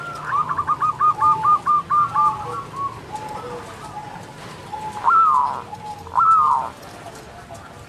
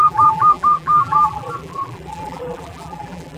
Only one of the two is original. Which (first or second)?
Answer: first